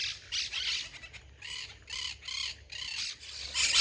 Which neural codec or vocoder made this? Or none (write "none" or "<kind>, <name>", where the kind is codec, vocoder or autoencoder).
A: none